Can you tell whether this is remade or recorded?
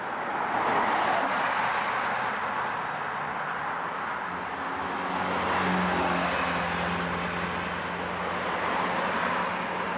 recorded